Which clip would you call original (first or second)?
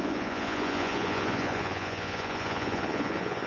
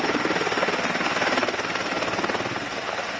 second